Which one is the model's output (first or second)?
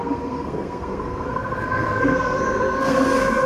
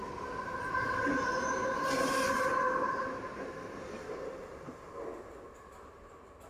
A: first